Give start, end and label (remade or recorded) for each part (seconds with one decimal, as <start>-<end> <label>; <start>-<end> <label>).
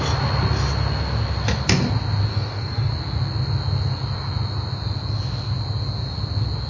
0.0-2.3 recorded; 2.3-2.9 remade; 2.9-6.7 recorded